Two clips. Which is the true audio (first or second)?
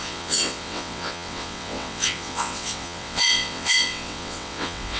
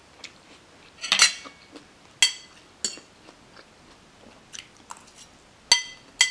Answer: second